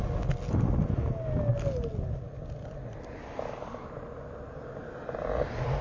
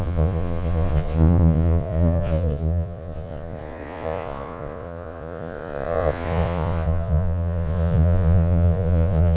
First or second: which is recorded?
first